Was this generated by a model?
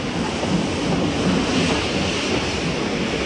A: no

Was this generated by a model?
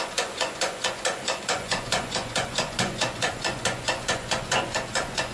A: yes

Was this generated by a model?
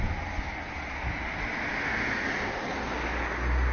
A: no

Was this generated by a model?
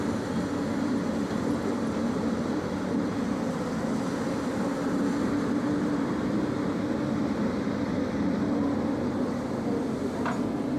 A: yes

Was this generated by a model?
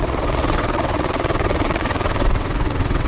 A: yes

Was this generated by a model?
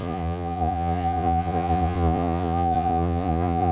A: yes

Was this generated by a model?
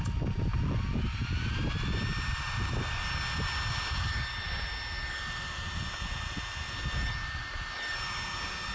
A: no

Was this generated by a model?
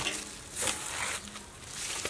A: no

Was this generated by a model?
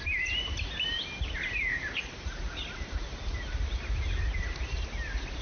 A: no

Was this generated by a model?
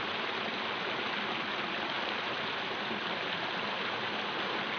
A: no